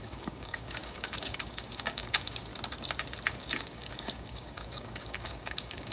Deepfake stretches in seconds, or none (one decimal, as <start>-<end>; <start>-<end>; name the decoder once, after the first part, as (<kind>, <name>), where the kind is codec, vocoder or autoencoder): 0.0-2.5 (codec, DAC); 3.3-5.9